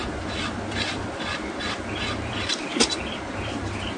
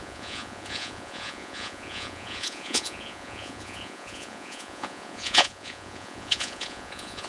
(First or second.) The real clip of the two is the first